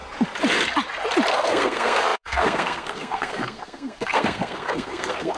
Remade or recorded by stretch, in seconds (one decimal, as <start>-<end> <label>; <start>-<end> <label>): 0.0-1.3 recorded; 1.3-5.4 remade